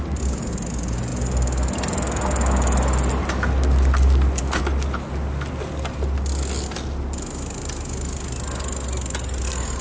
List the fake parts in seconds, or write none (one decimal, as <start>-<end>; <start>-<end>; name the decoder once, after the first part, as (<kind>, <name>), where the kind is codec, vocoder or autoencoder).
none